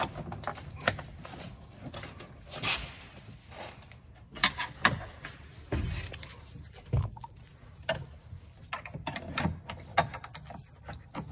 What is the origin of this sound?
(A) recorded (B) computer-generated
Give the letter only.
A